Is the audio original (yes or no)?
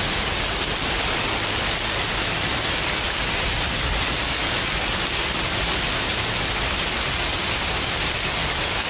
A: yes